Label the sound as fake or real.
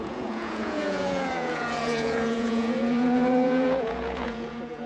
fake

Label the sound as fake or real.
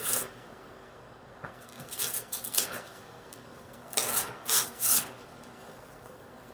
fake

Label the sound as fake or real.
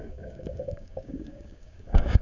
fake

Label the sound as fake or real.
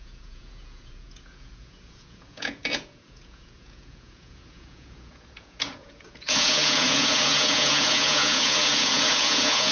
fake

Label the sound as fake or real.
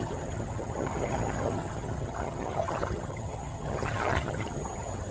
fake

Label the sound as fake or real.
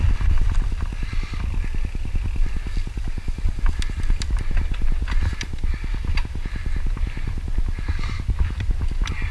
real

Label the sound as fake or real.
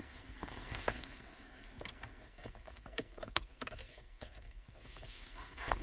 fake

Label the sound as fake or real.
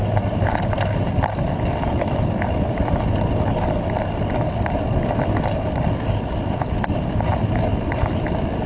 real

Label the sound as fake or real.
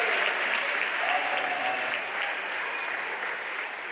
real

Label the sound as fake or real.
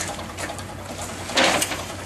real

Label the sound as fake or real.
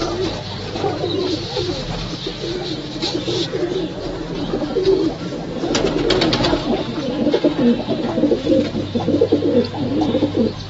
real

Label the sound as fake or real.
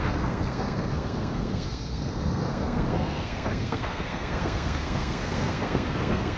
fake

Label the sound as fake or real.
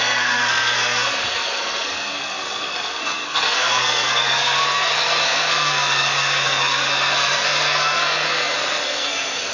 fake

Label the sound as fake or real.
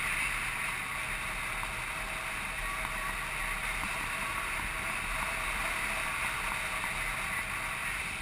real